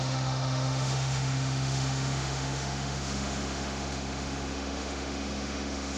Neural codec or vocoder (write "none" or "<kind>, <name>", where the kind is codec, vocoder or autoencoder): autoencoder, DAC-VAE